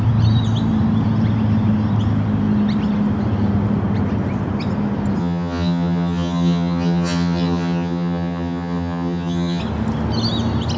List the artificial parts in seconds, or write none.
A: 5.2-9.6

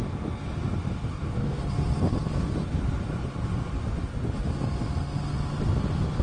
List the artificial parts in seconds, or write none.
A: 1.1-1.6